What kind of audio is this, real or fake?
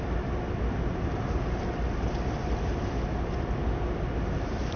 real